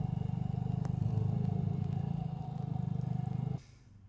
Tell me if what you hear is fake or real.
real